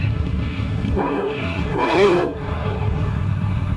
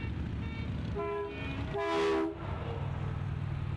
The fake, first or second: first